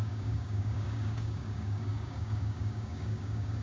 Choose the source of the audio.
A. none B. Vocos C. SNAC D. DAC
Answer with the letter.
D